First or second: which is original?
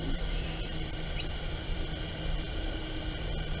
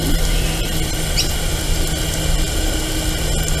second